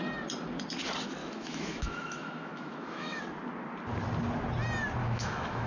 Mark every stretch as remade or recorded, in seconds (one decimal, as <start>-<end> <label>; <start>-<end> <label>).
0.0-1.2 recorded; 1.2-3.2 remade; 3.2-5.0 recorded; 5.0-5.7 remade

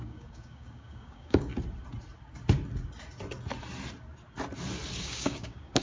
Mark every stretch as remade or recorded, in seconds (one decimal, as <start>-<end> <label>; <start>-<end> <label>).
0.0-1.5 remade; 1.5-5.0 recorded; 5.0-5.8 remade